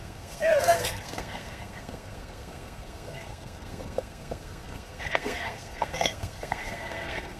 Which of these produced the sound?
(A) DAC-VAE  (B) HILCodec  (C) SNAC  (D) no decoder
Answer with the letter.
C